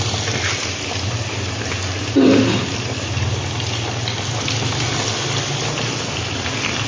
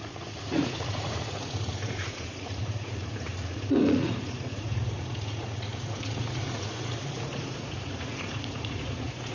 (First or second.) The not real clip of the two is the second